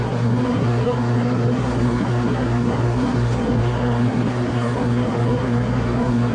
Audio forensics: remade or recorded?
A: remade